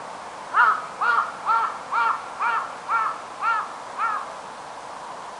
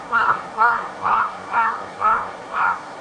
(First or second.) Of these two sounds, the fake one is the second